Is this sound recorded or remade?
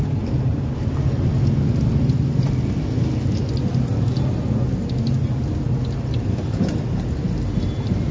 recorded